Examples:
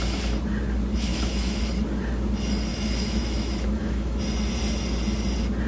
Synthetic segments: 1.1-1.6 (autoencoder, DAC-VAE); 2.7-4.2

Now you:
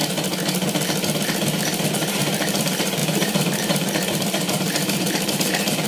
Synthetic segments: 1.9-5.9 (vocoder, BigVGAN v2)

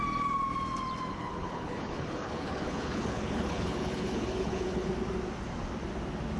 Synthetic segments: 1.1-4.9 (codec, HILCodec)

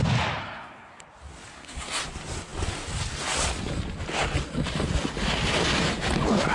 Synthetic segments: 0.4-1.0 (codec, SNAC); 1.5-2.0

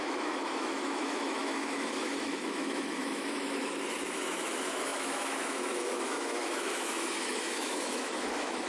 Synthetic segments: 0.0-8.7 (autoencoder, DAC-VAE)

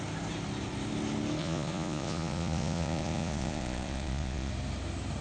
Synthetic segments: 1.4-4.5 (vocoder, Vocos)